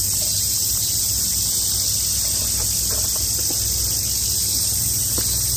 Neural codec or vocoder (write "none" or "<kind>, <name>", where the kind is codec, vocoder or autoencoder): none